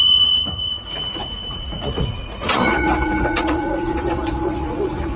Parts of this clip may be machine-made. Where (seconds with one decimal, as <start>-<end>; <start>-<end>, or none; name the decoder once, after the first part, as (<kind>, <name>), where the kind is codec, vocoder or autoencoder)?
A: 0.0-5.2 (vocoder, Vocos)